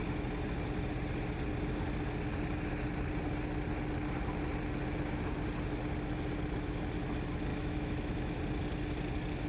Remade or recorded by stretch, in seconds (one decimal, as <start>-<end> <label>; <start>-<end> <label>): 0.0-7.5 recorded; 7.5-8.4 remade; 8.4-9.5 recorded